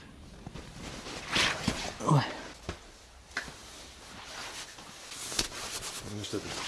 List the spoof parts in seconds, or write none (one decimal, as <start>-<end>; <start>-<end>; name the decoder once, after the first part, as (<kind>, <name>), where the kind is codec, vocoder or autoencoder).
none